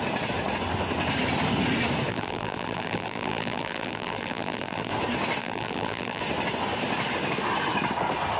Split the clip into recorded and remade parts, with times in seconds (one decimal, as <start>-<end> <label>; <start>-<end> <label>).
0.0-2.1 recorded; 2.1-4.9 remade; 4.9-5.4 recorded; 5.4-6.2 remade; 6.2-8.4 recorded